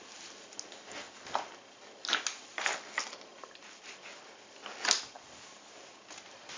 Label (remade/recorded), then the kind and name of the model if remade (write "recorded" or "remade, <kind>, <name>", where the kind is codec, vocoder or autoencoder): recorded